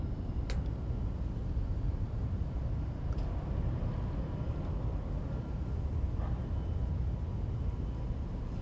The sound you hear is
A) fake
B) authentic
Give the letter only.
B